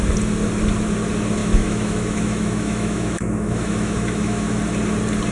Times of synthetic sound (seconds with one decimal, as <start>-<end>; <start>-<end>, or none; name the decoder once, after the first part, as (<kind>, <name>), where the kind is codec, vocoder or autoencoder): 1.4-4.6 (autoencoder, DAC-VAE)